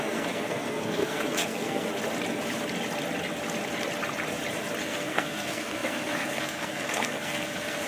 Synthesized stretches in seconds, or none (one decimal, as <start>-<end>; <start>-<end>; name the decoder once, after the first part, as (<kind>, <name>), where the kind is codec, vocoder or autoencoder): 0.0-1.9 (codec, SNAC); 4.8-7.9